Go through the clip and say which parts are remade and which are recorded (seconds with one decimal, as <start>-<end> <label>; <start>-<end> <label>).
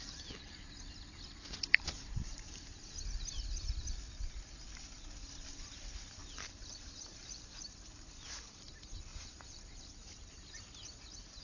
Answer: 0.0-6.2 recorded; 6.2-8.6 remade; 8.6-9.1 recorded; 9.1-10.4 remade; 10.4-11.4 recorded